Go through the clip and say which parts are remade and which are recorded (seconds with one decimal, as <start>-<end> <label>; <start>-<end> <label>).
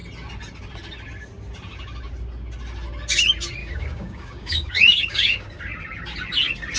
0.0-3.6 recorded; 3.6-5.6 remade; 5.6-6.8 recorded